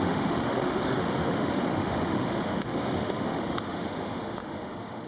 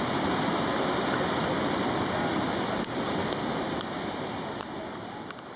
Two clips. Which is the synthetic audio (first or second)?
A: first